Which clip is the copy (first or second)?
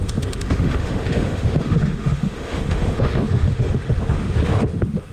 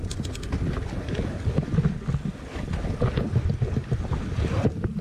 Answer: first